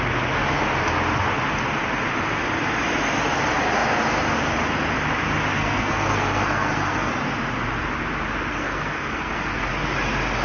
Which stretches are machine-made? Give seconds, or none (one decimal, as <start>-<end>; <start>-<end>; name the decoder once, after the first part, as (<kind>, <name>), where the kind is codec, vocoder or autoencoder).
5.6-7.1 (codec, SNAC); 8.5-9.7